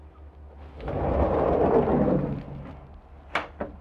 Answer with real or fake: real